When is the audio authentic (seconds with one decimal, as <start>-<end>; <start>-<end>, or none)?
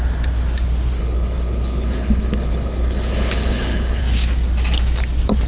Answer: 0.0-1.0; 4.0-5.5